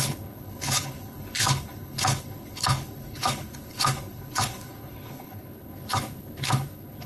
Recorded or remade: remade